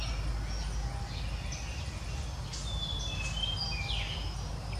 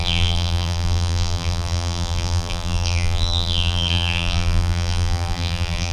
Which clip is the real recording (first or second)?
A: first